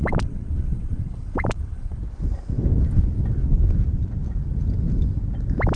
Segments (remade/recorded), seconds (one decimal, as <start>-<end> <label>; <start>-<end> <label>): 0.0-2.0 remade; 2.0-5.8 recorded